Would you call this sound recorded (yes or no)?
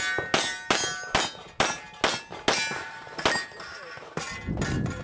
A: yes